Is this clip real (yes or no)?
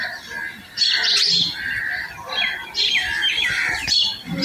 yes